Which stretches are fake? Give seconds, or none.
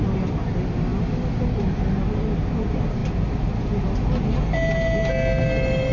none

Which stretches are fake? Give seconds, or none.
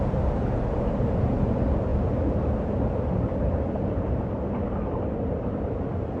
none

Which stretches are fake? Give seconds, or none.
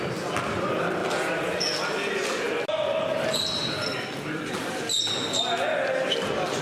none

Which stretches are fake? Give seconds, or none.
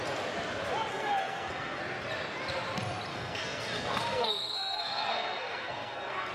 0.9-1.8 (codec, SNAC); 3.1-6.3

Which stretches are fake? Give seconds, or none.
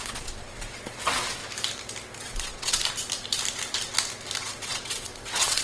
0.0-1.4 (vocoder, WaveNeXt); 2.2-2.8; 4.4-5.6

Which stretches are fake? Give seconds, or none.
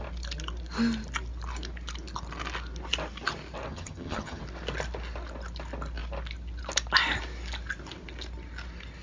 3.7-4.4 (vocoder, HiFi-GAN)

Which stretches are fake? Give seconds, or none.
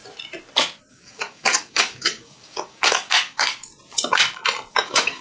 0.9-3.6 (codec, DAC); 4.7-5.2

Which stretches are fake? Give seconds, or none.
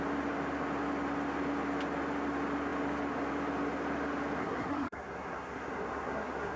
4.4-6.6 (codec, SNAC)